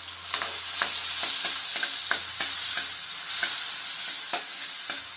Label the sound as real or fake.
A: real